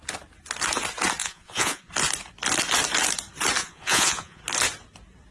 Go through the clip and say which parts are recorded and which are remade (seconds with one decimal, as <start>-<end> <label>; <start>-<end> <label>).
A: 0.0-1.2 recorded; 1.2-1.9 remade; 1.9-3.6 recorded; 3.6-4.4 remade; 4.4-5.3 recorded